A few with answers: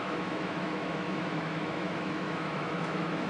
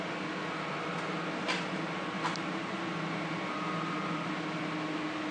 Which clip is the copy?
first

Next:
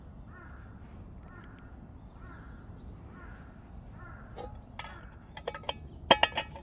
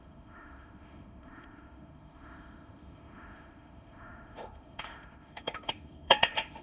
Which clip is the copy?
second